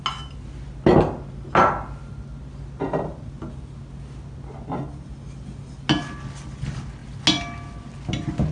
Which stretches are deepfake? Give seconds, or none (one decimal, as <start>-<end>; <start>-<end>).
none